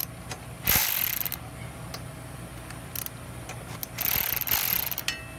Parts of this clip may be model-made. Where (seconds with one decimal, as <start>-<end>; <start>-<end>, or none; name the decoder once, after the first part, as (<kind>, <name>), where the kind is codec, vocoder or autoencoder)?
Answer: none